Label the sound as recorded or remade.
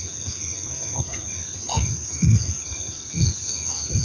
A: remade